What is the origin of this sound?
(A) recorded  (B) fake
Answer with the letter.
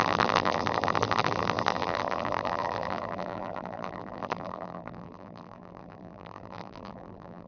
B